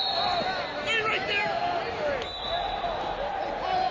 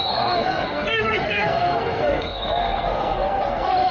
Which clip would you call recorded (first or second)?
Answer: first